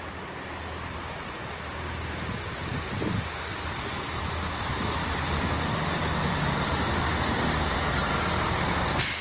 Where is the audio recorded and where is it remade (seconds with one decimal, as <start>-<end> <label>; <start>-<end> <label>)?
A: 0.0-9.2 recorded